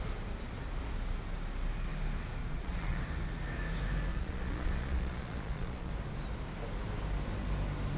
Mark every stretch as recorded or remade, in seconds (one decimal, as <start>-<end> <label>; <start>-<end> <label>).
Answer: 0.0-2.4 recorded; 2.4-3.0 remade; 3.0-4.1 recorded; 4.1-5.9 remade; 5.9-8.0 recorded